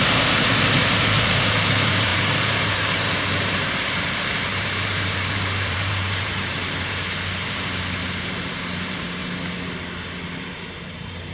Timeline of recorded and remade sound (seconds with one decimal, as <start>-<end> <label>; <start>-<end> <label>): 0.0-9.2 remade; 9.2-10.4 recorded; 10.4-11.3 remade